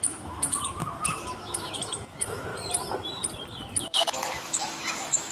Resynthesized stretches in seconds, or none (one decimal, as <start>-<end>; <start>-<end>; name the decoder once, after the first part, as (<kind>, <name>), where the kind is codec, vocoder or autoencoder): 0.0-2.5 (autoencoder, DAC-VAE); 3.8-5.3